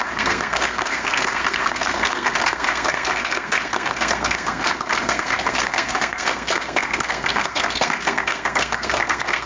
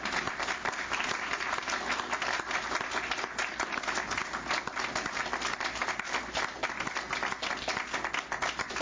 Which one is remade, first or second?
first